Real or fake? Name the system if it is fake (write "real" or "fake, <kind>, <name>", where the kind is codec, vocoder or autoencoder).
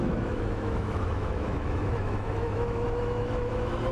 fake, autoencoder, DAC-VAE